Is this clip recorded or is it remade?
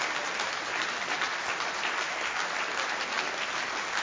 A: recorded